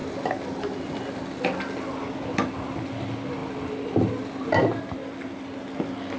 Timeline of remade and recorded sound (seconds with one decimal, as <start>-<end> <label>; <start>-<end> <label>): 0.0-6.2 recorded